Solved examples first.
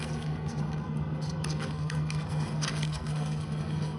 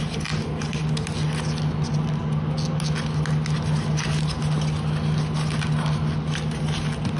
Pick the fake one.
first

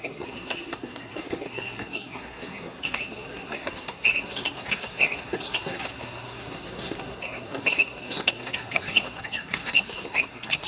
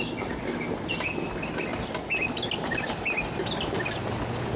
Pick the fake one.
first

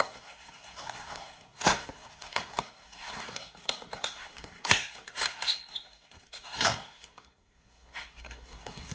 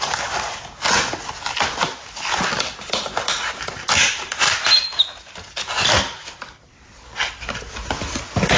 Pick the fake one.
first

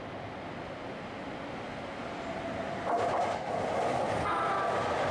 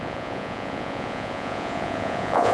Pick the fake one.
second